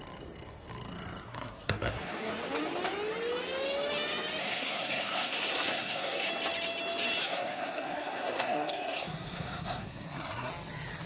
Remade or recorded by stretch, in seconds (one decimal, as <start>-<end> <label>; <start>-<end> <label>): 0.0-1.3 recorded; 1.3-2.3 remade; 2.3-4.4 recorded; 4.4-6.3 remade; 6.3-7.2 recorded; 7.2-10.5 remade; 10.5-11.1 recorded